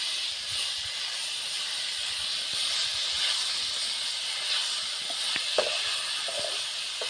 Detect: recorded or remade recorded